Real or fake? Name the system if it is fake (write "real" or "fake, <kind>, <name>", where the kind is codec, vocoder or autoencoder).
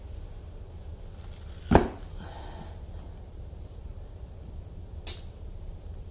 real